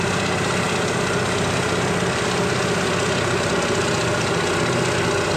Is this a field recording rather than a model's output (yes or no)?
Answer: yes